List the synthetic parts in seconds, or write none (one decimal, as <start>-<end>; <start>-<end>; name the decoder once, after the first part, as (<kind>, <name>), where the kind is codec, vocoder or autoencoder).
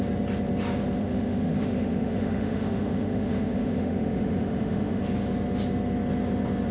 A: 1.0-5.0 (autoencoder, DAC-VAE)